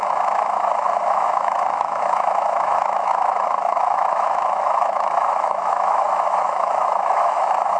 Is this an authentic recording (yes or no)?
no